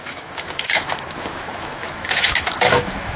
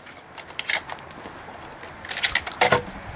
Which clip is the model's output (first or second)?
first